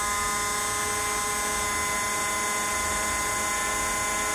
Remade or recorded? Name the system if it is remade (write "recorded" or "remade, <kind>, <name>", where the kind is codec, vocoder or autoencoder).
recorded